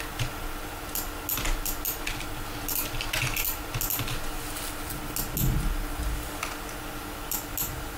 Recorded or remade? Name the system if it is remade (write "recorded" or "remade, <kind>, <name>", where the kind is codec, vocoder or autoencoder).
recorded